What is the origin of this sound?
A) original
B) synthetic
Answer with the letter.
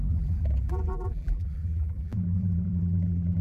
B